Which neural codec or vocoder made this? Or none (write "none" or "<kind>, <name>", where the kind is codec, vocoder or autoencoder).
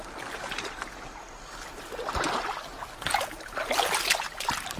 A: none